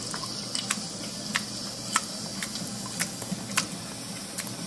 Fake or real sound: real